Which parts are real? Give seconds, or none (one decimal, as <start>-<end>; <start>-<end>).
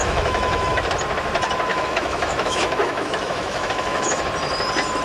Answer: 0.8-1.7; 4.2-5.0